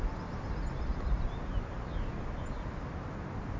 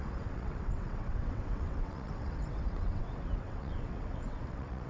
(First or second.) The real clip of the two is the first